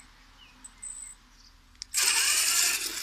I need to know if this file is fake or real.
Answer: real